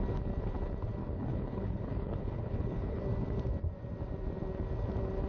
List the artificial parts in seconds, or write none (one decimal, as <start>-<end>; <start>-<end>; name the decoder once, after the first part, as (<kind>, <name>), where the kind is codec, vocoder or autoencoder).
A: 1.0-3.0 (codec, HILCodec)